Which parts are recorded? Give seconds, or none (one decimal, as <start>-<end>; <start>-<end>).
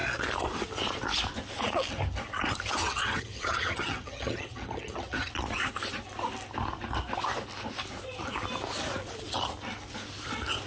0.0-2.8; 5.3-10.7